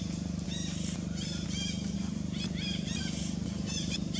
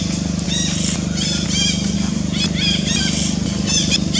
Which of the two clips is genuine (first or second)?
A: second